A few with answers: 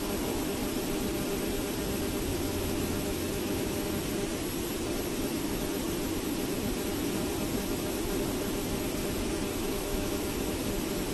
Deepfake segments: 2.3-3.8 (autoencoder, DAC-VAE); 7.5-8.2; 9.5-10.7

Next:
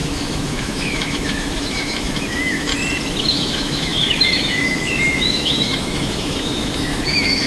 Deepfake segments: 0.0-2.7 (autoencoder, DAC-VAE); 3.2-7.5

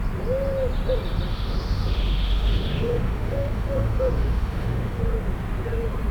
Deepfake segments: 1.3-5.0 (autoencoder, DAC-VAE)